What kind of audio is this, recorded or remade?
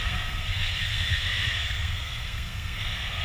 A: remade